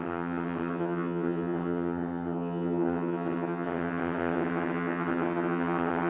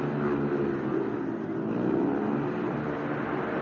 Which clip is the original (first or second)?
second